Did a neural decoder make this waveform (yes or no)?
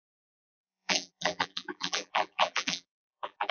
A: yes